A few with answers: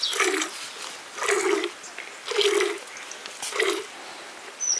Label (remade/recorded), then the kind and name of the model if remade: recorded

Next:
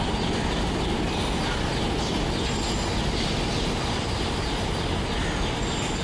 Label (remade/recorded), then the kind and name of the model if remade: recorded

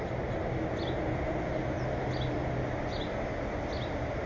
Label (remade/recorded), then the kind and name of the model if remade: recorded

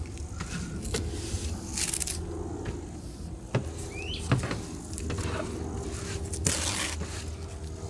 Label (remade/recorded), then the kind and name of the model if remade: recorded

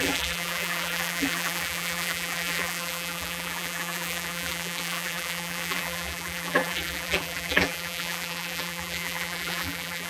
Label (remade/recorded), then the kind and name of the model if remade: remade, vocoder, BigVGAN v2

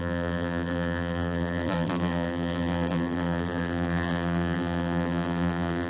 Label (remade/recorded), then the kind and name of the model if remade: remade, vocoder, BigVGAN v2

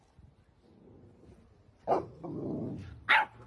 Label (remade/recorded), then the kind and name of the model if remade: recorded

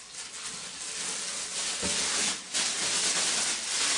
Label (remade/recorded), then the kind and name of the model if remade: recorded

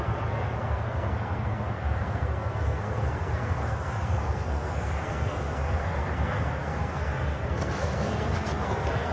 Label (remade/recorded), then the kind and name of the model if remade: remade, codec, SNAC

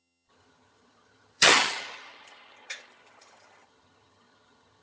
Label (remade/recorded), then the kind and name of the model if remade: remade, vocoder, HiFi-GAN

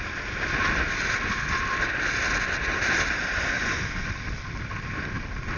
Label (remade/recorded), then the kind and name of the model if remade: recorded